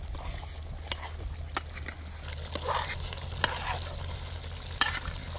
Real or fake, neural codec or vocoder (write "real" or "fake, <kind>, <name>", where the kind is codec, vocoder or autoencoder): real